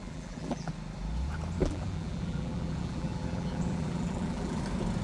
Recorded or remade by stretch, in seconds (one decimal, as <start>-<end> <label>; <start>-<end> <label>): 0.0-0.7 remade; 0.7-1.6 recorded; 1.6-4.6 remade; 4.6-5.0 recorded